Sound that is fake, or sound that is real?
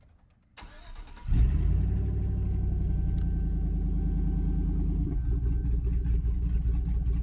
real